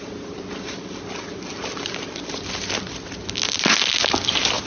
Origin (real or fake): real